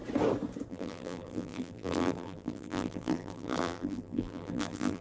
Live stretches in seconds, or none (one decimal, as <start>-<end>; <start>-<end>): 0.0-0.7